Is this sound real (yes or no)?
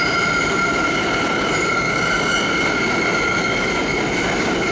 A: yes